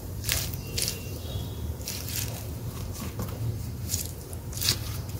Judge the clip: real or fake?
fake